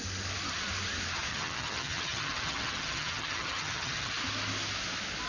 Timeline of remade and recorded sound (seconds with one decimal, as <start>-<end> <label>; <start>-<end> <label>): 0.0-1.3 recorded; 1.3-4.1 remade; 4.1-5.3 recorded